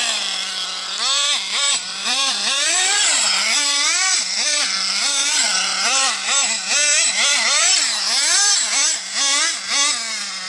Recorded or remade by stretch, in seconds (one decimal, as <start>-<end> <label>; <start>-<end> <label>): 0.0-5.7 remade; 5.7-10.5 recorded

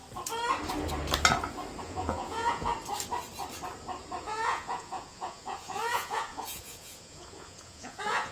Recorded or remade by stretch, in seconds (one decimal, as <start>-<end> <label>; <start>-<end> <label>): 0.0-1.8 recorded; 1.8-2.7 remade; 2.7-4.2 recorded; 4.2-8.3 remade